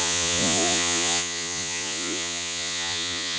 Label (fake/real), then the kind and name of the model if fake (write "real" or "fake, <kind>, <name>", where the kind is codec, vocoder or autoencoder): fake, vocoder, Vocos